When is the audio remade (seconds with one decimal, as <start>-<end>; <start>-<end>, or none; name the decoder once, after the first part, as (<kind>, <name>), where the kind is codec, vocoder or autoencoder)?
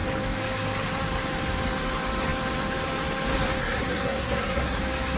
3.6-4.8 (codec, SNAC)